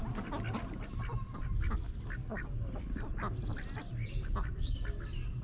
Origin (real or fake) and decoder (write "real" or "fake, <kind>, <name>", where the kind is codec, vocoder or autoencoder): real